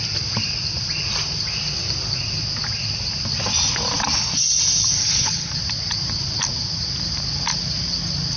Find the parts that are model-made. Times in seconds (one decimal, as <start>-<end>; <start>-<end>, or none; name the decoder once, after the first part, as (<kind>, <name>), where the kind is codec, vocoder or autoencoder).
5.0-5.6 (codec, HILCodec)

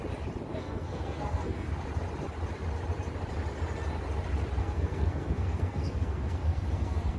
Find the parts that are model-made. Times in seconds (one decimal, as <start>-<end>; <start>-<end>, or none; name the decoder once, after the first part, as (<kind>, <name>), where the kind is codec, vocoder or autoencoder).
0.5-1.7 (codec, SNAC); 4.6-7.2

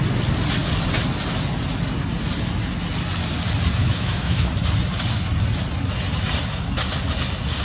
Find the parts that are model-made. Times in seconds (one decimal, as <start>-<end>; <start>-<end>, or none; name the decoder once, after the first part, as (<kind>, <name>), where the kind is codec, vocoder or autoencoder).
3.8-4.5 (autoencoder, DAC-VAE)